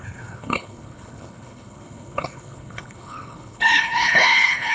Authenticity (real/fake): fake